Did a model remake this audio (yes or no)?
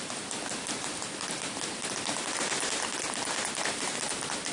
no